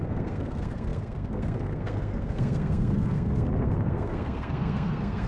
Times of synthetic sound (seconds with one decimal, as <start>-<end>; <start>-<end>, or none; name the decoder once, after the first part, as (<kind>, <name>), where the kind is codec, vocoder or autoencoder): 0.0-5.3 (codec, SNAC)